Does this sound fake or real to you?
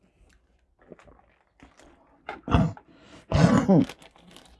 real